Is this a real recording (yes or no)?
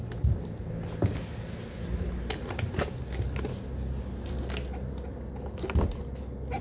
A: yes